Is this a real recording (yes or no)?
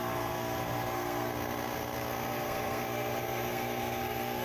no